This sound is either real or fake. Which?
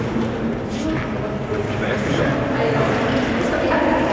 real